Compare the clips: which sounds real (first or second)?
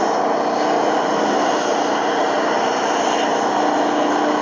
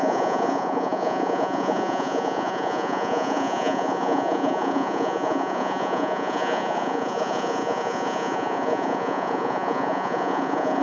first